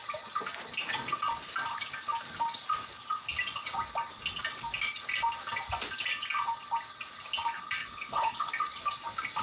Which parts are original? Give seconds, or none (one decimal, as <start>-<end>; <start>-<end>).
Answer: 0.0-7.8; 8.5-9.4